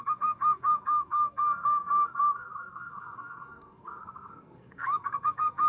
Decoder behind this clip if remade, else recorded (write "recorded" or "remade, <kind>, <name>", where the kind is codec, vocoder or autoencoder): remade, codec, SNAC